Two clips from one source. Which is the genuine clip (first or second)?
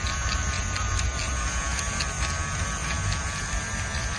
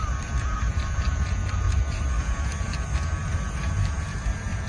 first